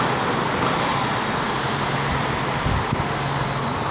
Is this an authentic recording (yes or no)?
yes